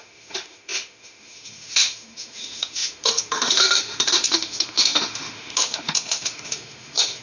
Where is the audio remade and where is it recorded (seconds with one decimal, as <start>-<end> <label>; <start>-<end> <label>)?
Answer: 0.0-7.2 remade